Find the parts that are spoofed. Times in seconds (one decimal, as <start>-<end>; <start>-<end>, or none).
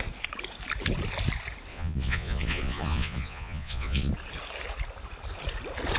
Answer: 1.7-4.1